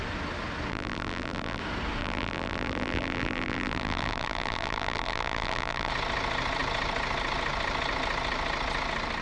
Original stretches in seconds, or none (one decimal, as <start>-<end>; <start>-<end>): 0.0-0.7; 1.6-2.0; 5.9-9.2